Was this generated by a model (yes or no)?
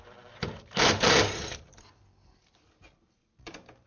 yes